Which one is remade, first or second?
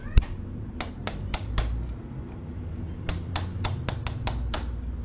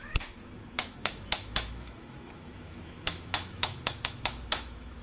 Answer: second